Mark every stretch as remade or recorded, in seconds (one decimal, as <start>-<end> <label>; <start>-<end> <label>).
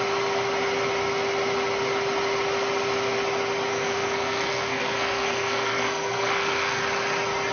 0.0-3.7 recorded; 3.7-6.8 remade; 6.8-7.5 recorded